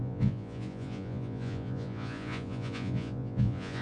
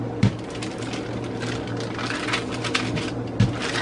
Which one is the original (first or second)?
second